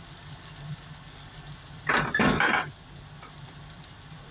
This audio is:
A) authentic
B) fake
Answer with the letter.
A